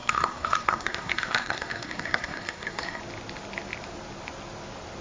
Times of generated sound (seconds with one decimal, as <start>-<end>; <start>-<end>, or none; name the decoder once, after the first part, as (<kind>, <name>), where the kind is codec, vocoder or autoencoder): 0.0-3.0 (codec, SNAC)